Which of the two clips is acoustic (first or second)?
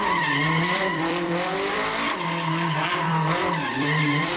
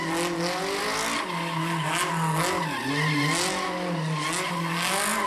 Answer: second